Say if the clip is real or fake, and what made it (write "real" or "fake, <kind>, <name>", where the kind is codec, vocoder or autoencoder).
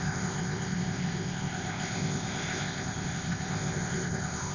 fake, codec, ZipCodec